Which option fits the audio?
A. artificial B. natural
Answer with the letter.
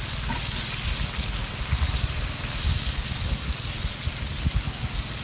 B